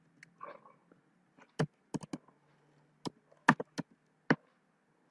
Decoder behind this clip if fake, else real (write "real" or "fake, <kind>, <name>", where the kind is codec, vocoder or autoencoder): real